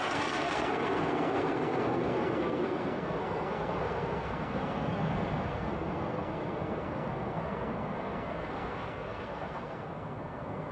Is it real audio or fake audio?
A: fake